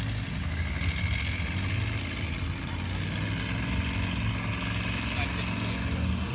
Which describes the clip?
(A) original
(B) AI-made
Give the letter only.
A